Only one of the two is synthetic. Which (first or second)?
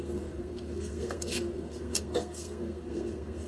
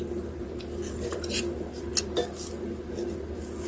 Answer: first